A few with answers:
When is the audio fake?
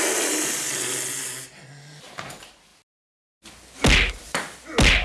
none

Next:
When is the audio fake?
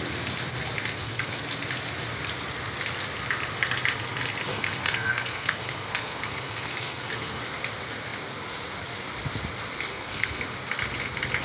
0.9-1.4 (codec, SNAC); 4.5-7.4; 9.9-10.4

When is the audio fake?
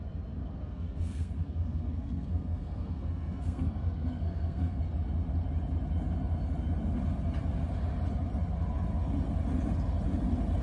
0.4-4.8 (codec, SNAC)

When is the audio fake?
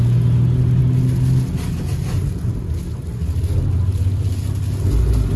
none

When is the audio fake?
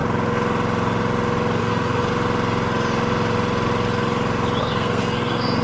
1.6-2.1 (codec, SNAC); 4.6-5.6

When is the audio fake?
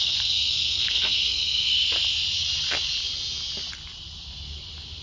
0.0-1.7 (codec, SNAC)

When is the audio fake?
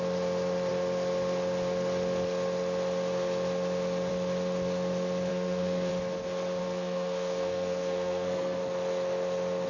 5.3-5.9 (codec, SNAC); 6.6-8.6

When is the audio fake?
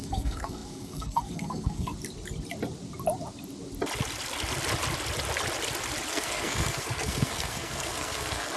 0.0-1.9 (codec, SNAC); 6.1-8.6